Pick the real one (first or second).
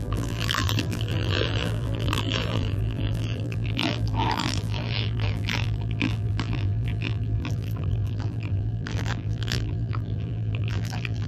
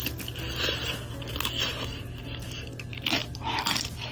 second